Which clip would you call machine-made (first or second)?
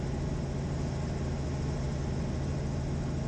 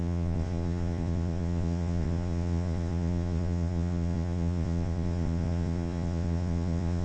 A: second